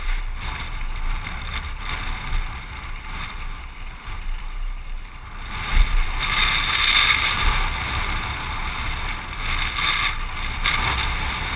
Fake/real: real